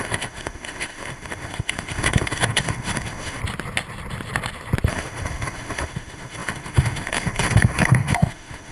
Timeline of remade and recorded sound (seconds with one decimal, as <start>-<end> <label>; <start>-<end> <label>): 0.0-3.4 remade; 3.4-4.9 recorded; 4.9-8.7 remade